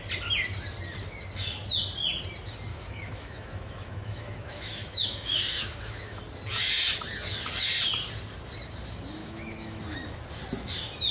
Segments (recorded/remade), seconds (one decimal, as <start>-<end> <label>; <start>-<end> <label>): 0.0-2.7 recorded; 2.7-6.2 remade; 6.2-9.2 recorded; 9.2-9.8 remade; 9.8-11.1 recorded